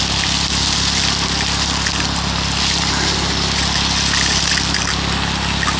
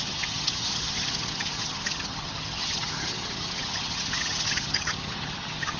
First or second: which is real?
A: first